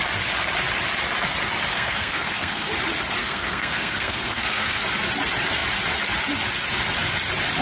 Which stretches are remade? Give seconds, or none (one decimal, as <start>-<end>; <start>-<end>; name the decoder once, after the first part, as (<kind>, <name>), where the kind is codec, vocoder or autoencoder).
1.7-2.7 (codec, SNAC); 3.2-4.8